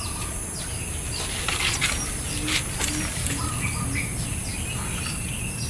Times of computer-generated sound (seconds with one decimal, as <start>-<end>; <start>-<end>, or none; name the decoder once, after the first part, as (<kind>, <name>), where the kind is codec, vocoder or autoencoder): none

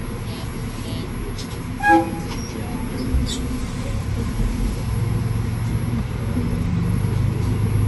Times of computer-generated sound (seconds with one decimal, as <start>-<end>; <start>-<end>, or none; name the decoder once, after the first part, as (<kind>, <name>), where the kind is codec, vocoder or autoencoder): 3.6-4.3 (vocoder, BigVGAN v2); 6.5-7.0

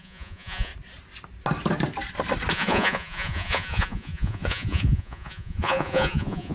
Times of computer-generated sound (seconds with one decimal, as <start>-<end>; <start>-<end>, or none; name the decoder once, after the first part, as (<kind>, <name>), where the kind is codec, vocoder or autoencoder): 0.0-0.7 (vocoder, Vocos); 2.5-6.5

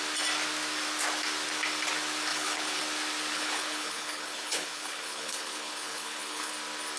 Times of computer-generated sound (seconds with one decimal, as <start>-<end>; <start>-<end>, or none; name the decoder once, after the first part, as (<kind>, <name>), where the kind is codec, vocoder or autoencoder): 2.3-2.8 (codec, HILCodec); 3.3-6.5

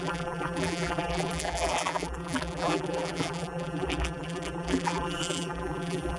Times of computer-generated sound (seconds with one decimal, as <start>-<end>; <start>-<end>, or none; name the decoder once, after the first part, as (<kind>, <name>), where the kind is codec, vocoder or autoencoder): 0.0-6.2 (vocoder, BigVGAN v2)